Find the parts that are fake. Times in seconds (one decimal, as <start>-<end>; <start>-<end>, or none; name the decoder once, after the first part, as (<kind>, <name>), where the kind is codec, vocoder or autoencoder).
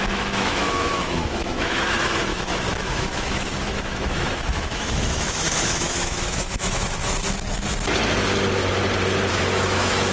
0.0-7.0 (autoencoder, DAC-VAE); 9.3-10.1